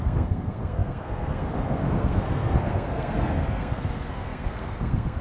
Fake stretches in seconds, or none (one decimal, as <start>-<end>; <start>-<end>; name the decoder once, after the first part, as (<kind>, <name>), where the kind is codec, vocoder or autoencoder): 0.0-5.2 (codec, SNAC)